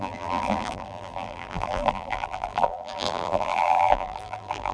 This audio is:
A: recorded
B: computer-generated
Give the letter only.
B